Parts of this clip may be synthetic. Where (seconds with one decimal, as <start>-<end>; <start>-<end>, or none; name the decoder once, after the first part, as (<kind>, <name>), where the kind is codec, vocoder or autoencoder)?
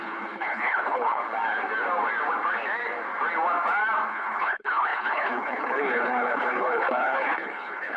0.0-1.2 (codec, HILCodec); 4.1-8.0